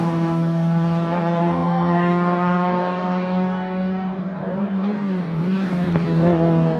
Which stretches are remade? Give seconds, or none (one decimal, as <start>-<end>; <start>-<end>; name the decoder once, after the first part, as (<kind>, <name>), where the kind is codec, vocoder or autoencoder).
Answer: 0.0-6.8 (codec, DAC)